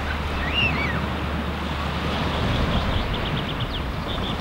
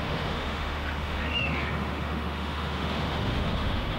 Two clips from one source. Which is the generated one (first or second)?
second